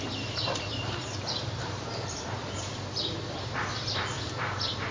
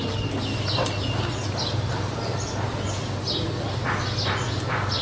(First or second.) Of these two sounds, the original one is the second